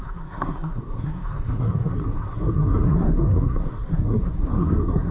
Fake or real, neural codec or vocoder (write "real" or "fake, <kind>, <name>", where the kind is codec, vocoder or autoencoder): fake, codec, SNAC